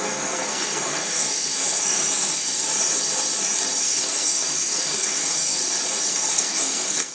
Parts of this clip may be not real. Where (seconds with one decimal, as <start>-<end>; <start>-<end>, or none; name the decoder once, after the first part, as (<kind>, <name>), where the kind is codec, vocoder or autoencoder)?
0.0-2.7 (codec, SNAC); 3.8-5.6; 6.1-7.1